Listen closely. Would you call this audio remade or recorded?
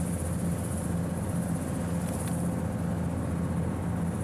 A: recorded